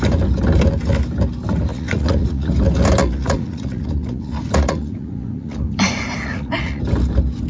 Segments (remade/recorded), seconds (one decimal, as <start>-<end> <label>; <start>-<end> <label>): 0.0-1.7 recorded; 1.7-2.5 remade; 2.5-3.0 recorded; 3.0-6.8 remade; 6.8-7.5 recorded